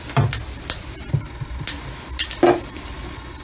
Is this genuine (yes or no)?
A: yes